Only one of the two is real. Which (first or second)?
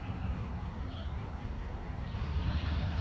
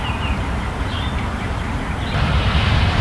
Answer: second